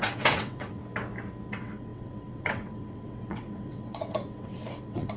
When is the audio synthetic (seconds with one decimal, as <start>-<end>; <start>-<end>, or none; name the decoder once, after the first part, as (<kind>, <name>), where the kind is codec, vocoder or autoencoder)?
0.0-0.8 (vocoder, WaveNeXt); 1.5-5.2